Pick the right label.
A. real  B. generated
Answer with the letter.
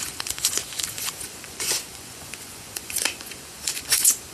B